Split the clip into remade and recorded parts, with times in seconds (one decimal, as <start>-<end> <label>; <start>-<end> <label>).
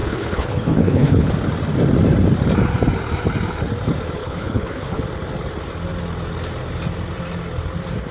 0.0-1.3 remade; 1.3-4.2 recorded; 4.2-5.0 remade; 5.0-8.1 recorded